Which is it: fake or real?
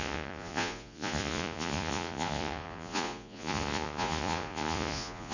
fake